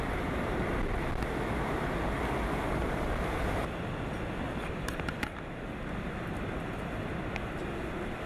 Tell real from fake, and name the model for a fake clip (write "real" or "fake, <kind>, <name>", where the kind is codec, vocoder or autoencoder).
real